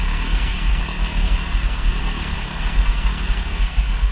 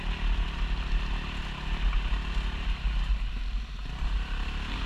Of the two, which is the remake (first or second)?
first